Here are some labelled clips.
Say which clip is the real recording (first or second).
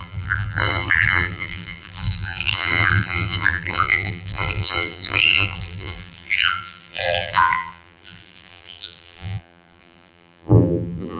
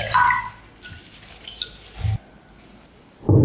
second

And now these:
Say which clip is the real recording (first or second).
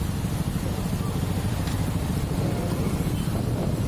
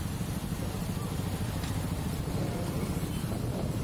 first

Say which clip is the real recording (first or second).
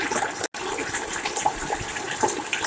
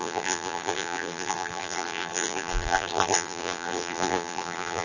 first